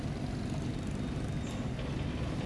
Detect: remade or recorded recorded